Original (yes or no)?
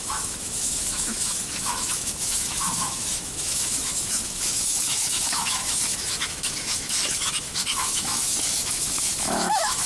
no